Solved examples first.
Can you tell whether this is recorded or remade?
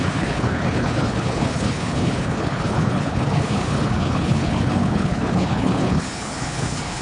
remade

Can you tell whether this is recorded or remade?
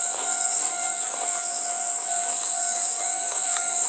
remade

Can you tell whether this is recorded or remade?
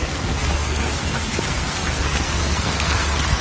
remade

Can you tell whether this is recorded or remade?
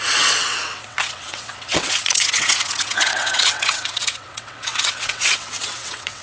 remade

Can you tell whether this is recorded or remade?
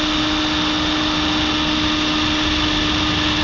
recorded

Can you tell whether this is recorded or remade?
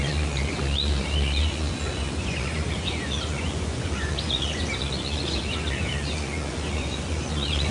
remade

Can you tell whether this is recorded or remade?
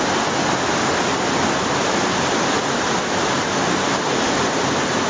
recorded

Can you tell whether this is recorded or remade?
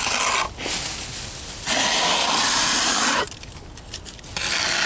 recorded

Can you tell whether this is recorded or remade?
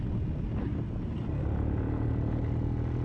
recorded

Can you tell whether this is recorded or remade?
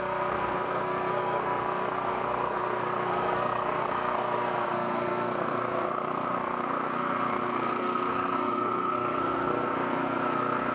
remade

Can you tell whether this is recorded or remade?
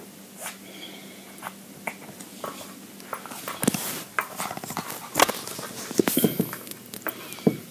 recorded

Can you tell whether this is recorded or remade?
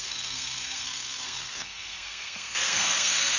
remade